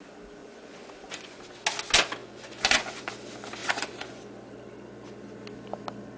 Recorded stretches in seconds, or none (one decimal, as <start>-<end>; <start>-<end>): 0.0-0.4; 1.4-2.2; 3.1-3.6; 4.2-6.2